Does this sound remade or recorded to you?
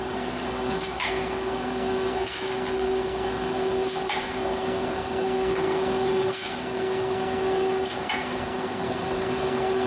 remade